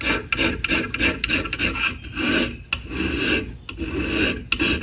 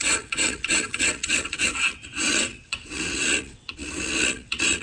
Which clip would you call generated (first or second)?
second